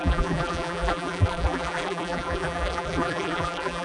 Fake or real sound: fake